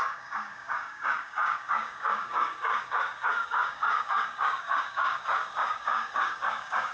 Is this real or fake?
fake